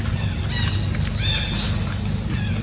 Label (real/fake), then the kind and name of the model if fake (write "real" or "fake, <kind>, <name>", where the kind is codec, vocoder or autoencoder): real